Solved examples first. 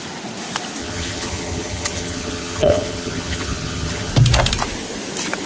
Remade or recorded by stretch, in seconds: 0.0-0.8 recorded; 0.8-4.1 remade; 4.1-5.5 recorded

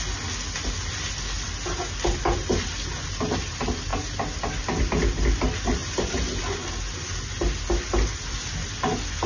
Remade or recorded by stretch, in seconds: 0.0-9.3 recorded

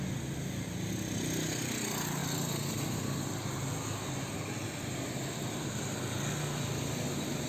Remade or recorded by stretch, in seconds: 0.0-7.5 recorded

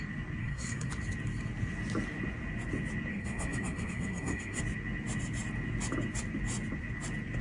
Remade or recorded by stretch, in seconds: 0.0-0.4 recorded; 0.4-0.9 remade; 0.9-3.1 recorded; 3.1-4.6 remade; 4.6-7.4 recorded